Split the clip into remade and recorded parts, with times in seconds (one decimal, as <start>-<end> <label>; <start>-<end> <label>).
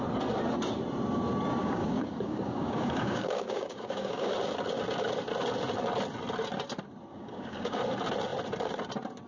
0.0-1.6 recorded; 1.6-4.3 remade; 4.3-7.1 recorded; 7.1-7.8 remade; 7.8-9.3 recorded